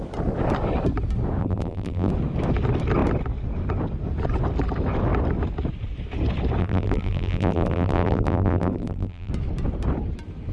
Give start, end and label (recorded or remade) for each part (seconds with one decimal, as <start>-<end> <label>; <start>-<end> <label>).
0.0-1.4 recorded; 1.4-2.1 remade; 2.1-6.6 recorded; 6.6-9.3 remade; 9.3-10.5 recorded